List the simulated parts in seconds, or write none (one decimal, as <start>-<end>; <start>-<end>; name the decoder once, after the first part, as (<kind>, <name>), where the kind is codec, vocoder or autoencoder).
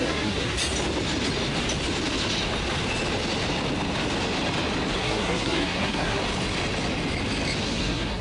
0.0-0.6 (codec, SNAC); 5.0-6.2; 7.6-8.2